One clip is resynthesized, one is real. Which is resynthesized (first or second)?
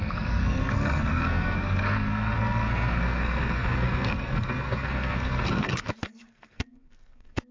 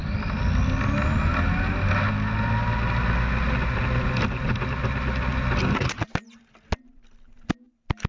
first